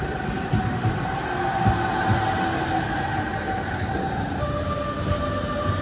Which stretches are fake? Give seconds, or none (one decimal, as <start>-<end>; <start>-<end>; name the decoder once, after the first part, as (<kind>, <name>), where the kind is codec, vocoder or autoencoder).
none